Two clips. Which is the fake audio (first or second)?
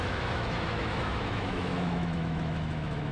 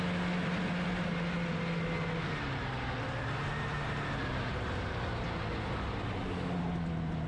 first